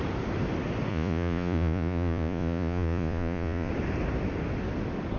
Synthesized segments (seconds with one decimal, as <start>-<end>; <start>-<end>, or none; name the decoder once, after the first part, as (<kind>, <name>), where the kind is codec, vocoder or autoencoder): 0.9-3.7 (vocoder, Vocos)